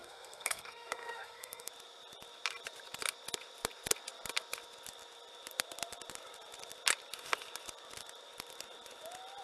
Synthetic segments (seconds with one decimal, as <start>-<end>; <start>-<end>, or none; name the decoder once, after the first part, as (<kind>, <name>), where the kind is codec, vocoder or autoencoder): 0.0-1.7 (codec, SNAC)